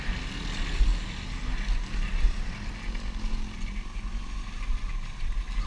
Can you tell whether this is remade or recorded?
recorded